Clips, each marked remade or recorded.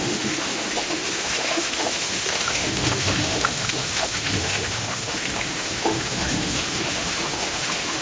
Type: remade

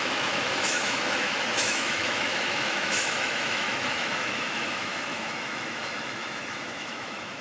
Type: remade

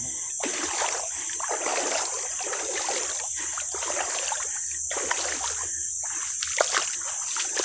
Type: recorded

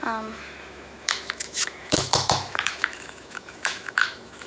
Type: remade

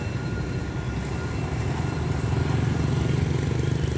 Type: recorded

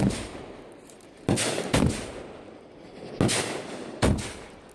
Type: recorded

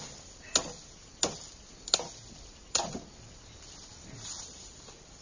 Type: recorded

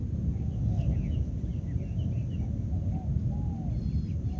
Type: recorded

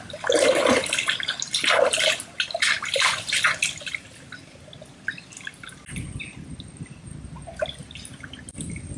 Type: recorded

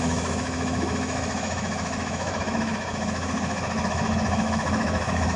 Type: remade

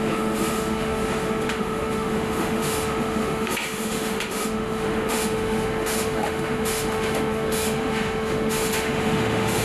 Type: remade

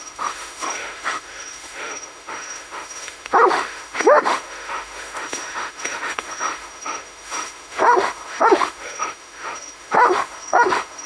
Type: remade